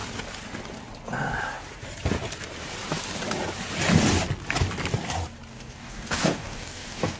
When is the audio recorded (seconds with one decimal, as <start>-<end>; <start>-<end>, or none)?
0.0-5.5